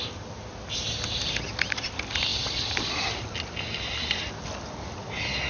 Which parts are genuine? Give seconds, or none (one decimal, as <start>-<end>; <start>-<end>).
0.0-5.5